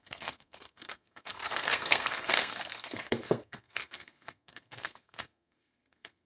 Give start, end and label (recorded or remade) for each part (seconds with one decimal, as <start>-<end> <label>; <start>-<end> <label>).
0.0-6.3 remade